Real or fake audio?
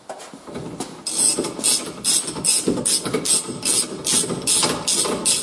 real